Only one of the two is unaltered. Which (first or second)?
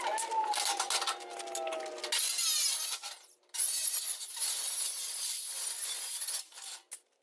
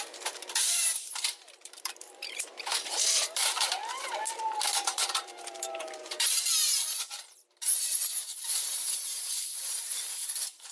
first